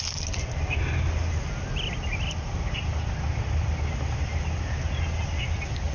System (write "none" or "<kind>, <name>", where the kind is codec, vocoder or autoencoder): none